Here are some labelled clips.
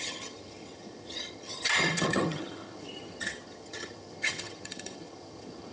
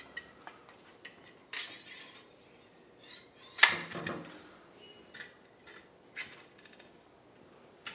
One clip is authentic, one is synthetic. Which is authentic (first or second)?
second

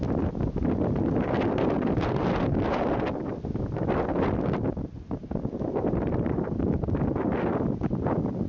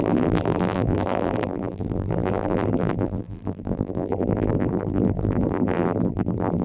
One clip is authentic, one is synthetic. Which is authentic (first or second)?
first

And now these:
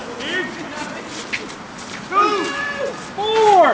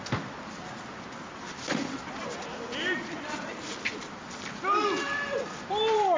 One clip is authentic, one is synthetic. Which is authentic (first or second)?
first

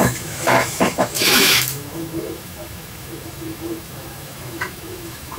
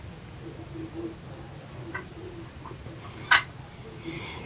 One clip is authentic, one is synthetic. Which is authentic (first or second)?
second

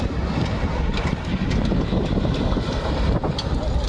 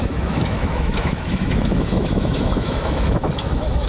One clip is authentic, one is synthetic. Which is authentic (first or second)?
first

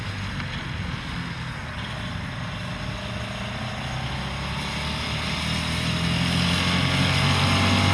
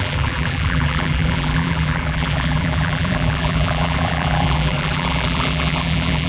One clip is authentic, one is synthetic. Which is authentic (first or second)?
first